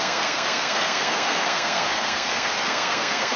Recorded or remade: remade